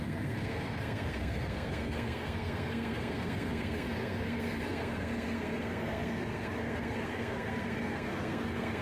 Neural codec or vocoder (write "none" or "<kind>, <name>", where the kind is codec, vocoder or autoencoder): codec, SNAC